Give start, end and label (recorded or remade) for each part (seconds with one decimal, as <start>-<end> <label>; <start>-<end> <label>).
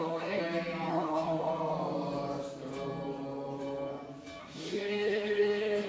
0.0-0.4 remade; 0.4-0.9 recorded; 0.9-1.5 remade; 1.5-4.4 recorded; 4.4-5.9 remade